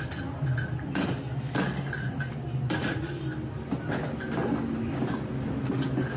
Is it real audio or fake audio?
real